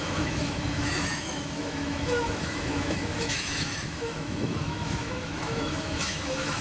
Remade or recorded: remade